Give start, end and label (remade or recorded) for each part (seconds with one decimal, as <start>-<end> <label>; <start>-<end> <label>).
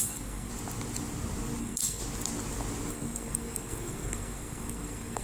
0.0-0.5 remade; 0.5-1.6 recorded; 1.6-2.0 remade; 2.0-2.9 recorded; 2.9-5.2 remade